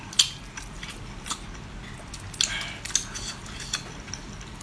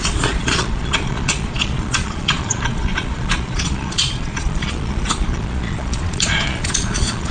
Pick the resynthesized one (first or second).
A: second